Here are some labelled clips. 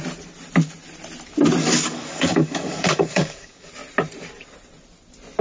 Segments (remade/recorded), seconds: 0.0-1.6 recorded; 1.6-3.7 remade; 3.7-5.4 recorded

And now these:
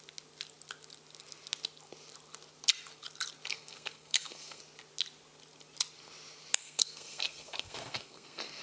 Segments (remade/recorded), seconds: 0.0-3.5 recorded; 3.5-4.6 remade; 4.6-6.6 recorded; 6.6-8.6 remade

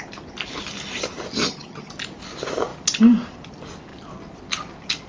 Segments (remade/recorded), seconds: 0.0-1.3 recorded; 1.3-1.9 remade; 1.9-5.1 recorded

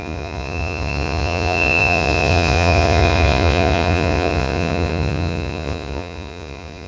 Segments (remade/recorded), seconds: 0.0-6.9 remade

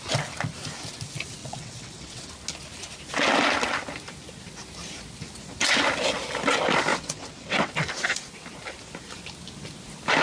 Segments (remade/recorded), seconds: 0.0-1.4 recorded; 1.4-2.3 remade; 2.3-6.9 recorded; 6.9-7.7 remade; 7.7-10.2 recorded